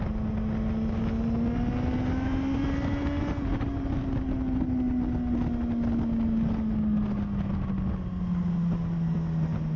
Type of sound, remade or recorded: recorded